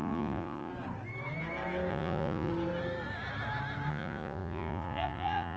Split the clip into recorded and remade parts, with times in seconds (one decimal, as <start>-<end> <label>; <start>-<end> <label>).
0.0-0.7 remade; 0.7-1.9 recorded; 1.9-2.5 remade; 2.5-3.9 recorded; 3.9-5.6 remade